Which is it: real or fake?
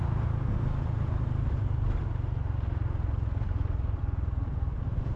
real